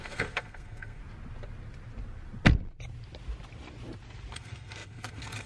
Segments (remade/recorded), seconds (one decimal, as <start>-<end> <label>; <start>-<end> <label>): 0.0-1.0 remade; 1.0-4.3 recorded; 4.3-5.5 remade